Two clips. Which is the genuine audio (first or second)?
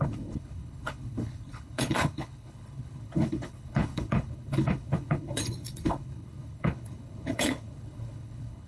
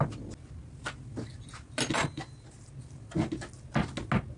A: second